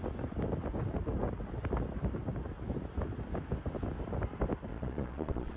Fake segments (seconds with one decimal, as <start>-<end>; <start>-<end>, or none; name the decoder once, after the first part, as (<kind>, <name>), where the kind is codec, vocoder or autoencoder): 4.7-5.6 (vocoder, Vocos)